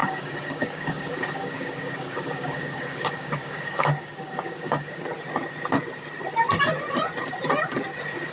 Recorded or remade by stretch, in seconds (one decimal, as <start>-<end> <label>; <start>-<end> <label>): 0.0-5.0 remade; 5.0-8.3 recorded